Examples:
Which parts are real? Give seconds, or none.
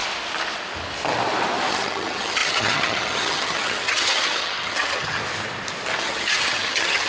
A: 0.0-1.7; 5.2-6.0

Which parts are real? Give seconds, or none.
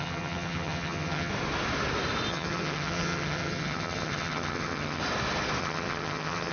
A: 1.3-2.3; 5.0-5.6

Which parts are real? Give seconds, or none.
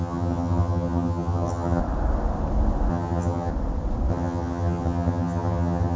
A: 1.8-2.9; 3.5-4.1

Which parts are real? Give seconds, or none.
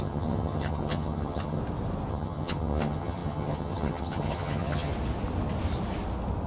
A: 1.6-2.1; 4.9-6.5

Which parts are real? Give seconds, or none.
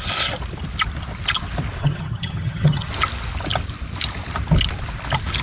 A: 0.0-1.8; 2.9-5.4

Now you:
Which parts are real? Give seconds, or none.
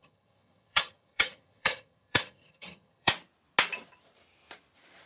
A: 3.1-5.1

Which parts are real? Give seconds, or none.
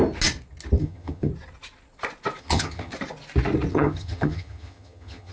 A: 0.0-0.8; 1.3-2.4; 2.9-3.7